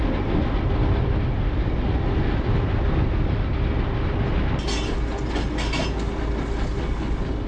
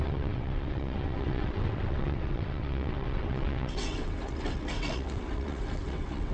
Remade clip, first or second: second